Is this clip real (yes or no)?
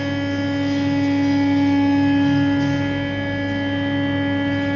yes